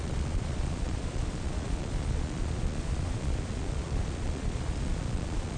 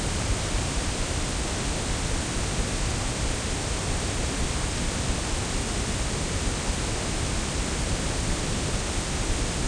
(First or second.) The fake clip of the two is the first